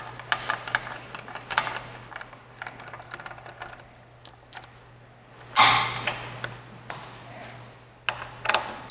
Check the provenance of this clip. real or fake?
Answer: real